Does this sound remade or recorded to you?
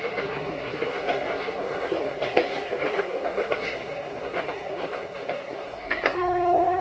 remade